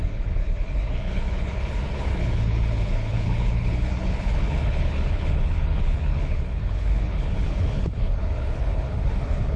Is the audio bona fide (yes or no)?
no